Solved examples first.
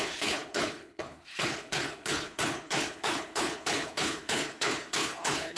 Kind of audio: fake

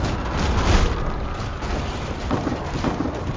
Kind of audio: real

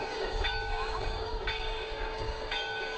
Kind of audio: fake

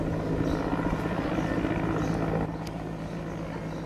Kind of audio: real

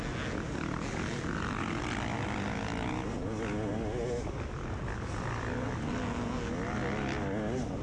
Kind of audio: real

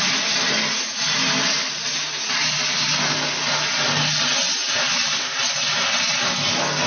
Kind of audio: real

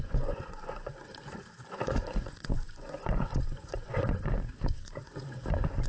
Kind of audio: fake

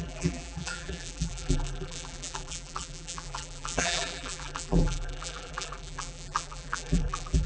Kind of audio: fake